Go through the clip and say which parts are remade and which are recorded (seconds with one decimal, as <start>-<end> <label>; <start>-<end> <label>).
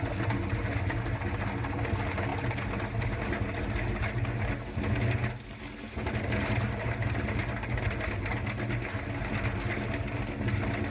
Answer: 0.0-10.9 recorded